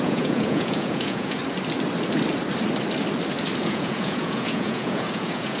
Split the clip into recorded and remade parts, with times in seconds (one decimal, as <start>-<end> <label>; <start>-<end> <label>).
0.0-1.4 remade; 1.4-3.6 recorded; 3.6-5.6 remade